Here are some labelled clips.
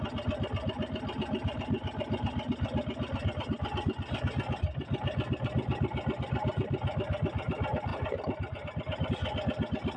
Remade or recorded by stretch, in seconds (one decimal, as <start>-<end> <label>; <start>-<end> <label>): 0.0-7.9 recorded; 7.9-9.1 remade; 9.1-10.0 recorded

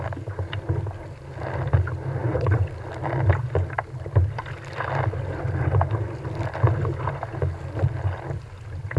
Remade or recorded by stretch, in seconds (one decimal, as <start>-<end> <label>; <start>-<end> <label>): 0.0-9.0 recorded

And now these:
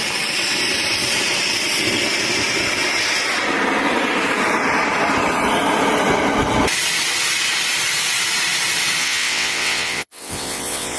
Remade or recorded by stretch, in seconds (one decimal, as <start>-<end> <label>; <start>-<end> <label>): 0.0-9.0 recorded; 9.0-11.0 remade

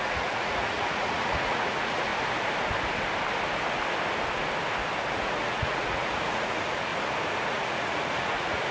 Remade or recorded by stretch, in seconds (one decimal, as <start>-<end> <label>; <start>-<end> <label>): 0.0-2.1 remade; 2.1-5.1 recorded; 5.1-6.9 remade; 6.9-7.4 recorded; 7.4-8.7 remade